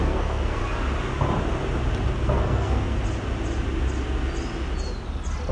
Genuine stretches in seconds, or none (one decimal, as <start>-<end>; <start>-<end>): 0.6-2.1; 3.0-5.5